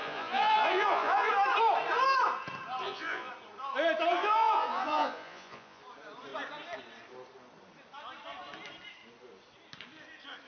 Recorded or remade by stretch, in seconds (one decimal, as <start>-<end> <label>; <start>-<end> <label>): 0.0-1.3 remade; 1.3-2.8 recorded; 2.8-3.3 remade; 3.3-4.2 recorded; 4.2-5.8 remade; 5.8-10.5 recorded